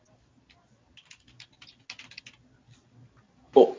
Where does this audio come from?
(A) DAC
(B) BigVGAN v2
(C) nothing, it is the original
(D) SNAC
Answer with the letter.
C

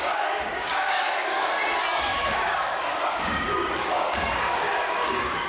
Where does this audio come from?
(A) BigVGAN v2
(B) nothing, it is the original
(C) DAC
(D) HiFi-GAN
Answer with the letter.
C